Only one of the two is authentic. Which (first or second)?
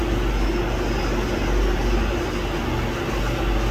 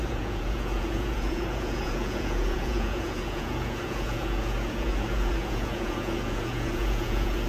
first